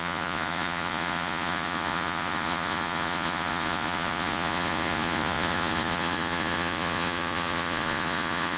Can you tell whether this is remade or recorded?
remade